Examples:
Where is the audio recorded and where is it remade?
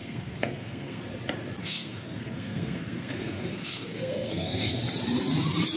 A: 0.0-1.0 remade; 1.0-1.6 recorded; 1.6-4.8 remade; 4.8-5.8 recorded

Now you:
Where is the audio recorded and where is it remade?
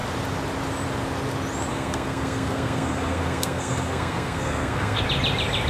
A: 0.0-1.7 recorded; 1.7-5.0 remade; 5.0-5.7 recorded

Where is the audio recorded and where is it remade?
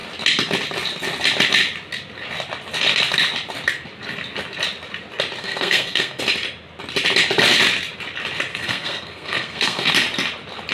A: 0.0-5.4 recorded; 5.4-6.2 remade; 6.2-8.5 recorded; 8.5-9.9 remade; 9.9-10.7 recorded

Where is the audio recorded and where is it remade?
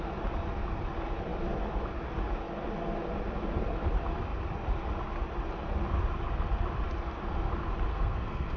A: 0.0-7.9 recorded; 7.9-8.6 remade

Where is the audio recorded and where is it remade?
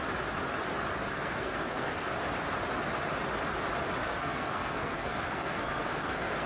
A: 0.0-1.0 recorded; 1.0-2.1 remade; 2.1-4.0 recorded; 4.0-6.5 remade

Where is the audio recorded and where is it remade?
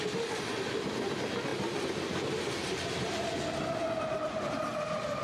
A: 0.0-5.2 recorded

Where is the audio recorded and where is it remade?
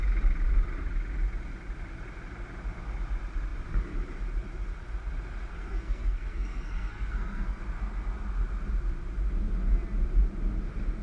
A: 0.0-5.5 recorded; 5.5-7.6 remade; 7.6-11.0 recorded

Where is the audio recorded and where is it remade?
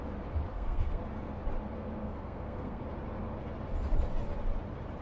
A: 0.0-0.5 recorded; 0.5-1.0 remade; 1.0-2.0 recorded; 2.0-2.8 remade; 2.8-5.0 recorded